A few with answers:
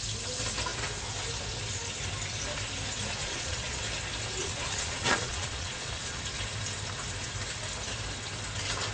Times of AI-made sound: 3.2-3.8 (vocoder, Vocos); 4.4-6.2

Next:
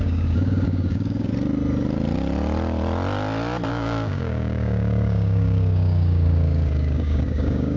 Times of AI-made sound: 0.0-1.3 (codec, DAC); 3.7-7.8

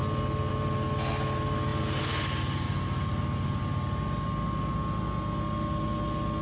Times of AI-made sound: none

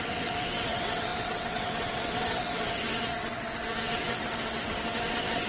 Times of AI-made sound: 0.0-5.5 (vocoder, WaveNeXt)